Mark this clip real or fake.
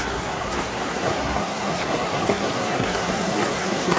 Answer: fake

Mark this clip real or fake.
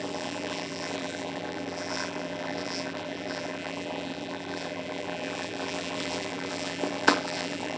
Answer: fake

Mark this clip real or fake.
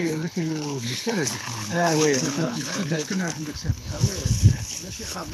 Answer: fake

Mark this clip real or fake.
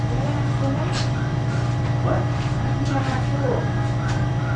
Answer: fake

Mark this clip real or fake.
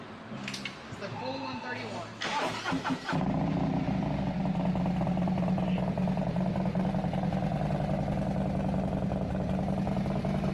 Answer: real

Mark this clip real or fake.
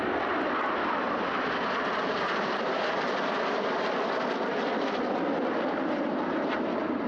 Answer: real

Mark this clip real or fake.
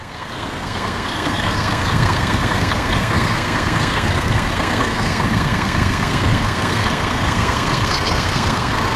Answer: fake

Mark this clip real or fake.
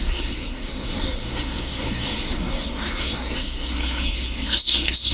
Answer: fake